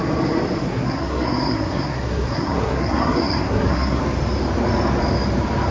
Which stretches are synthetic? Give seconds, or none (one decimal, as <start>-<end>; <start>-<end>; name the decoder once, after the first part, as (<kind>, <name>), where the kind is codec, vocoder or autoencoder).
0.6-4.0 (codec, SNAC)